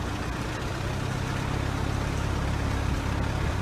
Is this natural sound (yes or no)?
yes